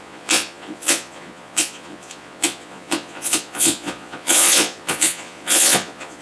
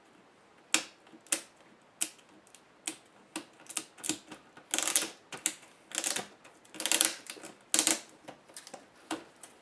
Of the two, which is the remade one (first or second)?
first